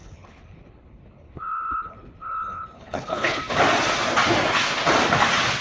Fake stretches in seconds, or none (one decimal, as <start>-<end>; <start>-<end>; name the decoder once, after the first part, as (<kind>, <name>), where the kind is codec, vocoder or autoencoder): 0.0-3.4 (codec, HILCodec)